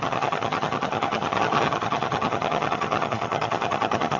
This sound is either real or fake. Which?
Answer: fake